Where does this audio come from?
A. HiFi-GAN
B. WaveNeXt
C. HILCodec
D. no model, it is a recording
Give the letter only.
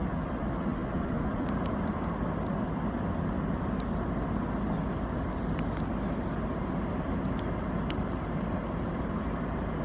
D